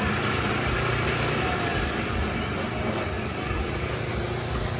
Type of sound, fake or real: real